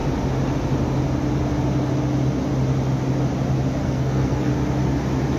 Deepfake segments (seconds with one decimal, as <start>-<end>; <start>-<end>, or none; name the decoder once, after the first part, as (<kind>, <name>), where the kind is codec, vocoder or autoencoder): 3.8-4.5 (codec, SNAC)